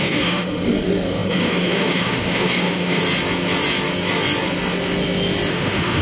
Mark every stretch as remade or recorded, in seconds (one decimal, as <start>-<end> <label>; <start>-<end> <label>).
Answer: 0.0-3.0 remade; 3.0-5.5 recorded; 5.5-6.0 remade